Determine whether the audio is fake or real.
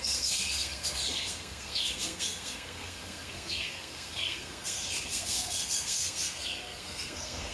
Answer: fake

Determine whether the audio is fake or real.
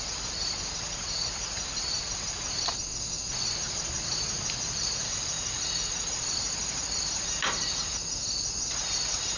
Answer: real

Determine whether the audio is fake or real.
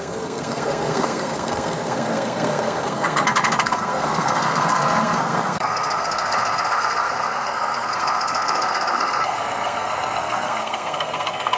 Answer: fake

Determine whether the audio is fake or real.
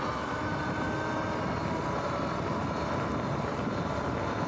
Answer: real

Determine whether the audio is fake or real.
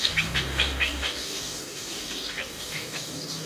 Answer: fake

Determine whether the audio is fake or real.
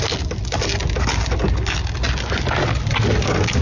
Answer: real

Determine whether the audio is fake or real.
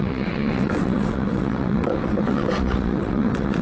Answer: fake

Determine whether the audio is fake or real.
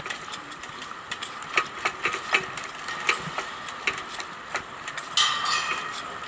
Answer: real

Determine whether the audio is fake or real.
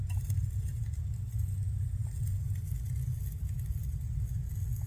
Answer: real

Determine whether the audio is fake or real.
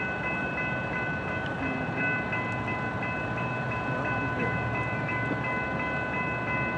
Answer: real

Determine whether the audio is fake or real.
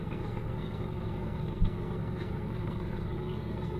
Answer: fake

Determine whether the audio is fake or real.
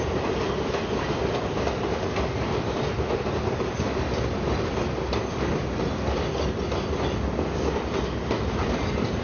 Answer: real